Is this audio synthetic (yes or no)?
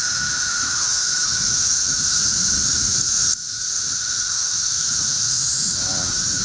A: yes